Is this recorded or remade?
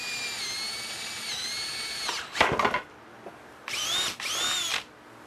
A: recorded